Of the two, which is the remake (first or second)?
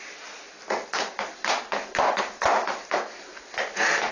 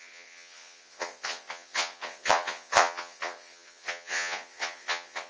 second